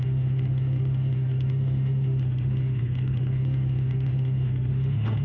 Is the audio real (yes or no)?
no